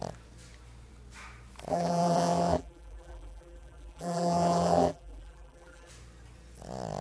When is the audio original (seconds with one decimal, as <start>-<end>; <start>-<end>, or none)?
0.0-1.7; 5.9-7.0